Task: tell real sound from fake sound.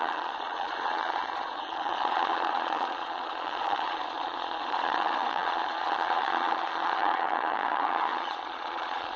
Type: fake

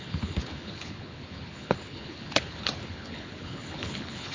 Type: fake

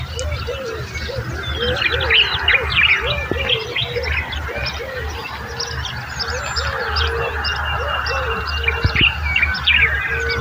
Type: real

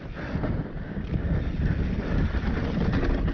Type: real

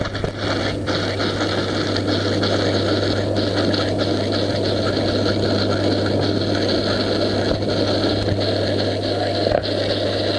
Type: real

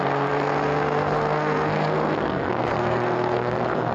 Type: fake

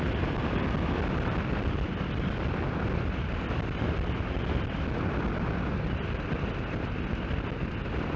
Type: real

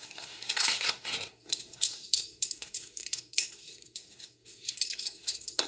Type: fake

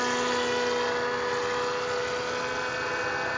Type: real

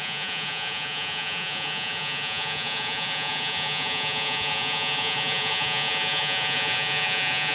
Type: fake